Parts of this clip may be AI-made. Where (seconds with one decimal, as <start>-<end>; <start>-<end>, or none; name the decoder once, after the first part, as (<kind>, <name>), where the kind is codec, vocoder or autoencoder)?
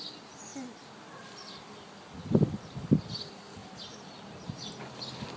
none